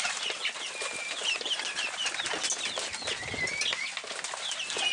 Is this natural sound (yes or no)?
yes